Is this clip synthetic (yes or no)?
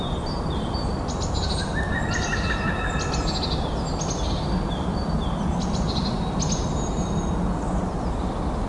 no